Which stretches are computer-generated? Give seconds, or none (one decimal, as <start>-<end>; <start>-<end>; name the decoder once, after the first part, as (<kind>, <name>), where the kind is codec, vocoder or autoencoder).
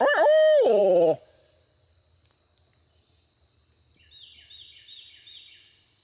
none